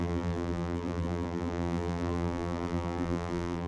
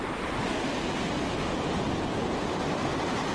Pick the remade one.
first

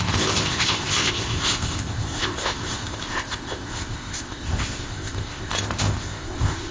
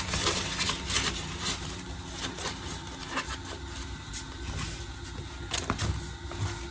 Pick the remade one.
first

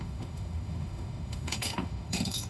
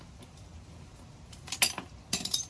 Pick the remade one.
first